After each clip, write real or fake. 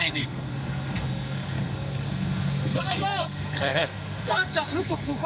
fake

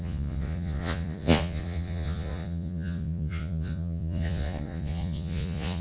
fake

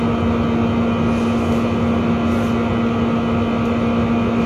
real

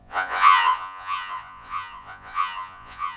fake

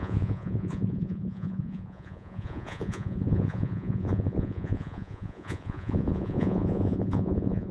fake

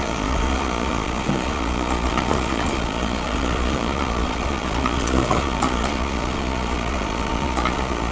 fake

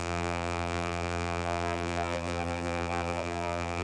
fake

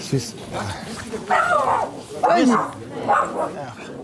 real